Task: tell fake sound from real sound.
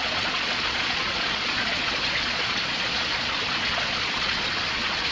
fake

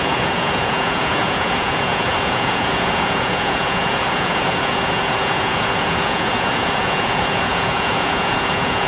fake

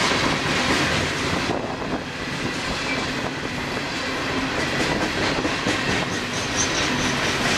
real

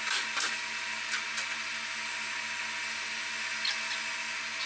real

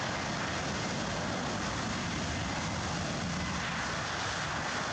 real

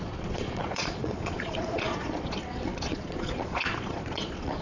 fake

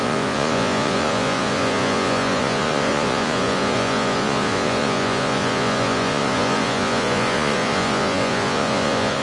fake